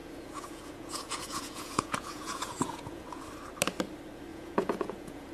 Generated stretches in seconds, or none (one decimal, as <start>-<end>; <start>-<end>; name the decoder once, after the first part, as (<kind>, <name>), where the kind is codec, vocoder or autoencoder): 0.0-3.2 (vocoder, Vocos); 4.3-5.3